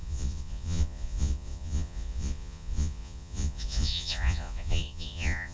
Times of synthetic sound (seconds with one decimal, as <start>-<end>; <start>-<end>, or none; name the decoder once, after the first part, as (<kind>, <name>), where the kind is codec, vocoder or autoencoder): 0.0-5.5 (vocoder, Vocos)